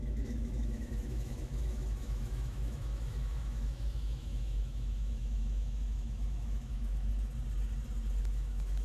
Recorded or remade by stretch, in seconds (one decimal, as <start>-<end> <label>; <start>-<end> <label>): 0.0-7.1 remade; 7.1-8.2 recorded; 8.2-8.8 remade